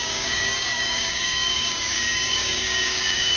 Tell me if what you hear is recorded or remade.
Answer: remade